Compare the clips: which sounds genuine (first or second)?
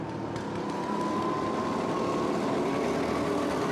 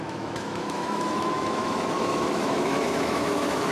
first